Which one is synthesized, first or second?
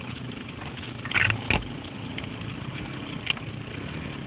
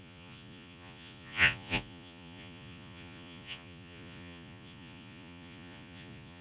second